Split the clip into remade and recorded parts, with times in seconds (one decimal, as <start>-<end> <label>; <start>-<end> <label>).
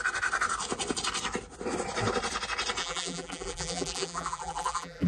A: 0.0-2.8 recorded; 2.8-5.1 remade